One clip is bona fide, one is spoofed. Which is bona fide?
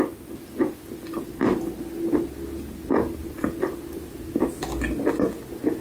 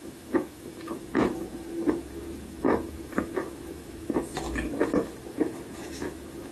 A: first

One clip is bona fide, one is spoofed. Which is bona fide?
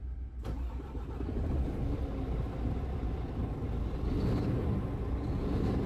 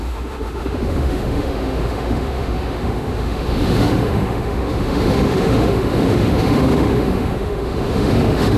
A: first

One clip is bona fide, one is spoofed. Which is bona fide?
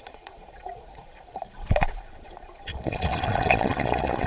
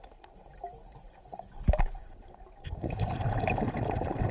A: second